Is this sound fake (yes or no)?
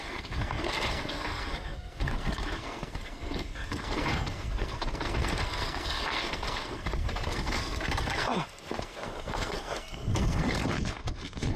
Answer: yes